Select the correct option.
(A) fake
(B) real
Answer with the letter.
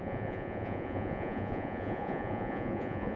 A